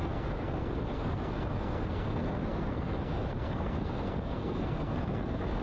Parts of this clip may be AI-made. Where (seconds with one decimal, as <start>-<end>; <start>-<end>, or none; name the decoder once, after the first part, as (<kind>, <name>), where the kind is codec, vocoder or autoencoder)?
0.0-5.6 (codec, SNAC)